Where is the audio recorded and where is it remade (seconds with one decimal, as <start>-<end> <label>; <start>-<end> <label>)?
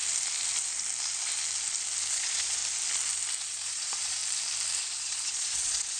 0.0-2.1 recorded; 2.1-2.6 remade; 2.6-3.4 recorded; 3.4-4.2 remade; 4.2-4.8 recorded; 4.8-6.0 remade